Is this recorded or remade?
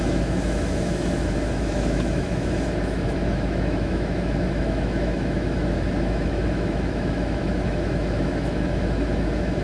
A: remade